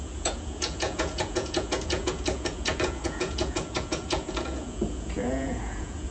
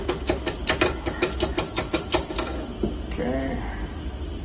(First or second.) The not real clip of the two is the first